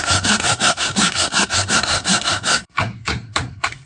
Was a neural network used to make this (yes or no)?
yes